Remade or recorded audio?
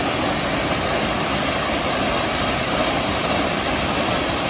recorded